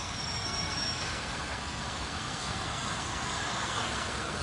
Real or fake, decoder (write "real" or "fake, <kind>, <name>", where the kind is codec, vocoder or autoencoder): fake, codec, SNAC